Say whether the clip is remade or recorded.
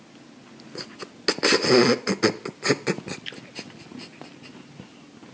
recorded